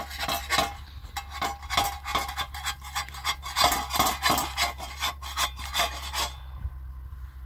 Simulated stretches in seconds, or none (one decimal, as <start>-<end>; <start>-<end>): 2.1-6.1